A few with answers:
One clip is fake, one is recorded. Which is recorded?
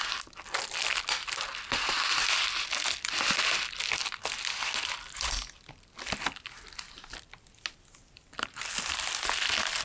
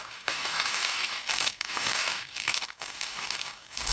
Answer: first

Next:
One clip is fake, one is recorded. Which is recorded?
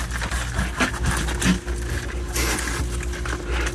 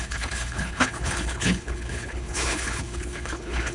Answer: first